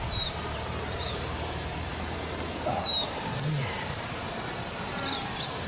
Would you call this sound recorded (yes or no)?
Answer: no